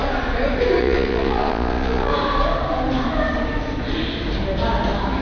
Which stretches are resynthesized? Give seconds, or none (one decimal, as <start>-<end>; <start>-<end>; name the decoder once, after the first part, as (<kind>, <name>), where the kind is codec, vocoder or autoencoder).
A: 0.8-2.1 (vocoder, Vocos)